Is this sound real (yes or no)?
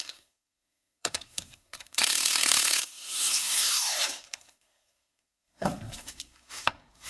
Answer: no